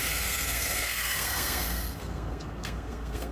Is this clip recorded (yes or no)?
no